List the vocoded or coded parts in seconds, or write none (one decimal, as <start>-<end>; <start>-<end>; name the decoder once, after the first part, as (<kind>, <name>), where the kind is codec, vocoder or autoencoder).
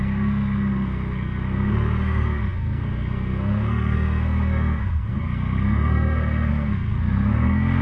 0.0-7.8 (codec, SNAC)